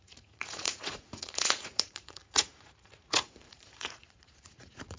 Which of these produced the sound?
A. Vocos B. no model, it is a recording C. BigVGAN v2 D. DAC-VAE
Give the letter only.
A